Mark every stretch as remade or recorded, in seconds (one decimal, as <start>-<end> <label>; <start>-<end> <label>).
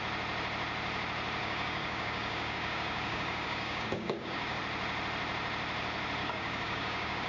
0.0-1.4 recorded; 1.4-4.6 remade; 4.6-6.2 recorded; 6.2-7.3 remade